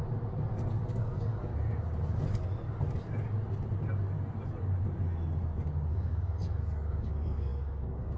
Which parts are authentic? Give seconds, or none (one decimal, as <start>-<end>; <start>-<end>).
0.0-0.9; 1.5-5.9